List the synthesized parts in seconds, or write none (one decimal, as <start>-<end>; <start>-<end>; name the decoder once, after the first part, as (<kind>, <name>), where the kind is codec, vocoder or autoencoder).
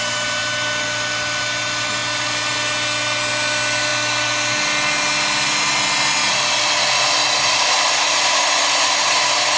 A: none